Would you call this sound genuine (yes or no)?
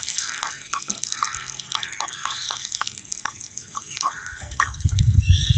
no